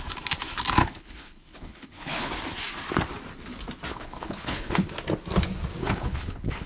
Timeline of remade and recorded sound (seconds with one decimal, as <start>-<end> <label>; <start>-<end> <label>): 0.0-0.8 recorded; 0.8-2.3 remade; 2.3-3.9 recorded; 3.9-4.9 remade; 4.9-5.8 recorded; 5.8-6.7 remade

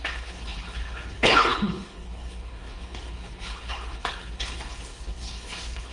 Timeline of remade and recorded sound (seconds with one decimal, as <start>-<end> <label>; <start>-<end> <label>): 0.0-5.9 remade

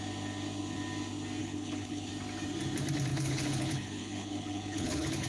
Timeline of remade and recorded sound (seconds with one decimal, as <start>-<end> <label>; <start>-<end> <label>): 0.0-1.4 recorded; 1.4-2.1 remade; 2.1-3.1 recorded; 3.1-5.3 remade

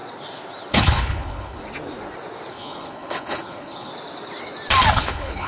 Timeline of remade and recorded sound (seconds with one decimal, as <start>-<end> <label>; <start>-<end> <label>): 0.0-0.7 recorded; 0.7-1.6 remade; 1.6-2.5 recorded; 2.5-3.9 remade; 3.9-4.9 recorded; 4.9-5.5 remade

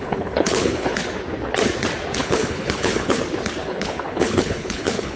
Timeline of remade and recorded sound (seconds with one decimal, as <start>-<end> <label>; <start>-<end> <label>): 0.0-1.0 remade; 1.0-2.2 recorded; 2.2-3.2 remade; 3.2-3.6 recorded; 3.6-5.2 remade

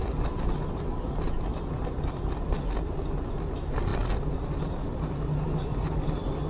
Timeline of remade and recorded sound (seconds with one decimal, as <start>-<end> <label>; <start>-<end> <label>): 0.0-6.5 recorded

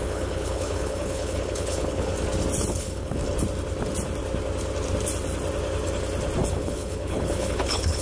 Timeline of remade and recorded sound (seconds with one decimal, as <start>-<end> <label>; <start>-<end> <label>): 0.0-2.1 remade; 2.1-2.7 recorded; 2.7-3.2 remade; 3.2-6.5 recorded; 6.5-8.0 remade